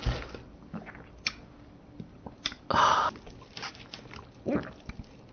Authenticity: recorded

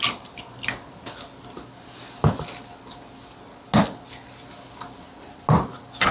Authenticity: recorded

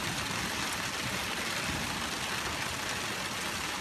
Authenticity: recorded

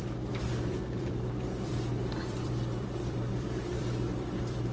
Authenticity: remade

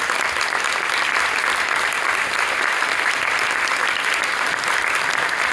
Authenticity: remade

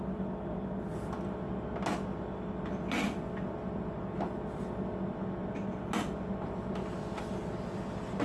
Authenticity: recorded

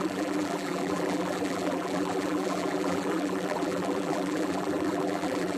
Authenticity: remade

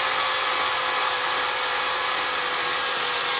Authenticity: remade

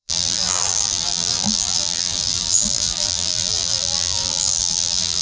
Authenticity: remade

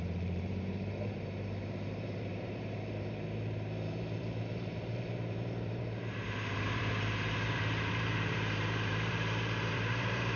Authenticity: remade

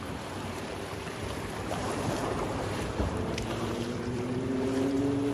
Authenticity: remade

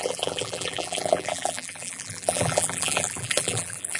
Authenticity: remade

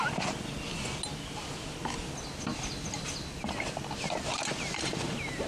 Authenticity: recorded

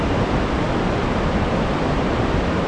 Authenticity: recorded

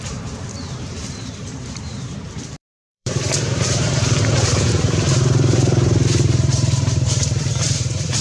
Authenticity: remade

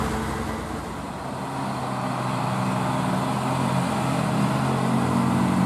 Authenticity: recorded